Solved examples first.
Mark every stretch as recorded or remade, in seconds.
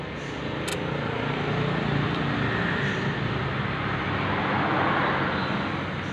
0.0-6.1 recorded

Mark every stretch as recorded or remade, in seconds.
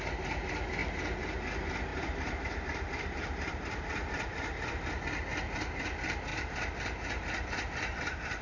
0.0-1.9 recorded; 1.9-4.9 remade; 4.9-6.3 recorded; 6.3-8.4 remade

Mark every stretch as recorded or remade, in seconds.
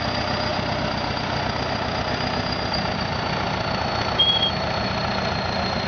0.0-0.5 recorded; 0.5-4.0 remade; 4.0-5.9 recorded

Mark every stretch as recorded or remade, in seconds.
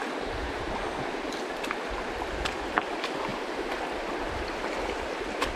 0.0-1.9 remade; 1.9-3.3 recorded; 3.3-4.3 remade; 4.3-5.6 recorded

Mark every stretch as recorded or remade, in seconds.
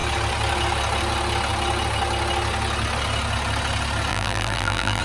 0.0-4.1 recorded; 4.1-5.0 remade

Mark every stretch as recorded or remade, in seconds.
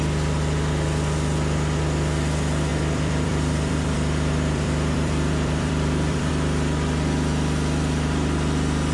0.0-2.7 recorded; 2.7-6.3 remade; 6.3-8.9 recorded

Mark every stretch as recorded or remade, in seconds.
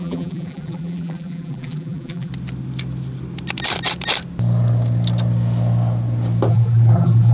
0.0-2.3 remade; 2.3-6.5 recorded; 6.5-7.3 remade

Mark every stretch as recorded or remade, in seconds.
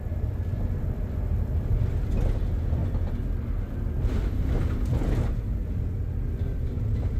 0.0-7.2 recorded